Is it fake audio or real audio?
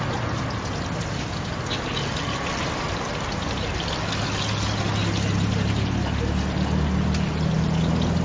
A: real